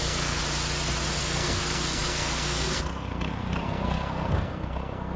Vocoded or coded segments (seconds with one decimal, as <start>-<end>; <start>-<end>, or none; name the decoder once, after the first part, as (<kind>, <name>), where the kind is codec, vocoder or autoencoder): 0.0-0.4 (codec, SNAC); 1.2-5.2

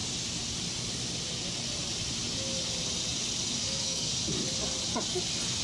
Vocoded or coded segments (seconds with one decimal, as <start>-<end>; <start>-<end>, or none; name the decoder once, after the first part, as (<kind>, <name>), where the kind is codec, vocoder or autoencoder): 3.6-4.1 (codec, SNAC)

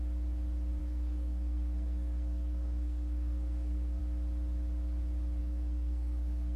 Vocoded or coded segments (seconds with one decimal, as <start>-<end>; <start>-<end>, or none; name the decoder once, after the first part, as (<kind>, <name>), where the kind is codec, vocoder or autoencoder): 0.8-4.0 (codec, SNAC); 5.4-6.6

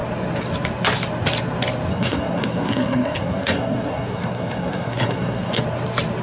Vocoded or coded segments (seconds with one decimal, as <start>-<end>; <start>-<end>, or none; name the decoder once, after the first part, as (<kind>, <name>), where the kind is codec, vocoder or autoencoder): 1.9-5.6 (codec, SNAC)

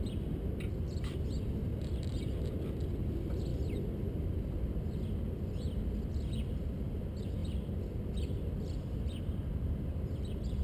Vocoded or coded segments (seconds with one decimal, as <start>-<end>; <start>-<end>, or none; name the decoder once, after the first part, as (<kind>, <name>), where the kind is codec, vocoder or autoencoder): none

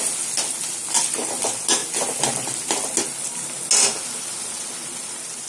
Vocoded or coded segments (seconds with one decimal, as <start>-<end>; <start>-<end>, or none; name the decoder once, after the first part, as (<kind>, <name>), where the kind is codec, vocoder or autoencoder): none

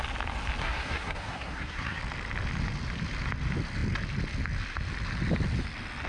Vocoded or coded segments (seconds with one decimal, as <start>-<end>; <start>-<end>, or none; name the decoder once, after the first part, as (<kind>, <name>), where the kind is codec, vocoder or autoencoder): 0.6-2.0 (codec, SNAC)

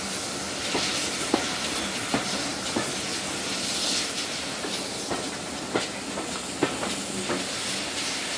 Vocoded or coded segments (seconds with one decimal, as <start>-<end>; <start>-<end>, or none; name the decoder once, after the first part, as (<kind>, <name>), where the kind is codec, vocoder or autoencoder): none